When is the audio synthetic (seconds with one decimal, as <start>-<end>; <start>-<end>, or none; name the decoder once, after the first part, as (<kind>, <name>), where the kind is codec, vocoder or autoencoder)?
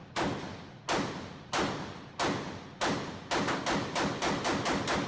none